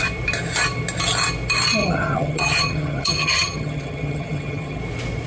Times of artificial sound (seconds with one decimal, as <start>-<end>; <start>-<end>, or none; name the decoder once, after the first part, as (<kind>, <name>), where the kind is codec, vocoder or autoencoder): 1.8-4.8 (vocoder, HiFi-GAN)